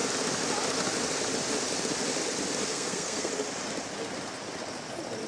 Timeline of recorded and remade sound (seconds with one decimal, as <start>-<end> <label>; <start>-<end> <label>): 0.0-2.7 recorded; 2.7-3.3 remade; 3.3-5.3 recorded